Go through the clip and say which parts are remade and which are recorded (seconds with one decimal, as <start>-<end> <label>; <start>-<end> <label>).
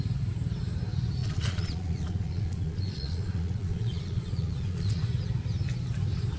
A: 0.0-1.2 recorded; 1.2-5.0 remade; 5.0-6.4 recorded